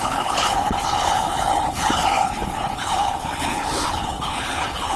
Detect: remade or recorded remade